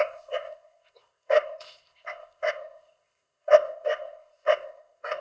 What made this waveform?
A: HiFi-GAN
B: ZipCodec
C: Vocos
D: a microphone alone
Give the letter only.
B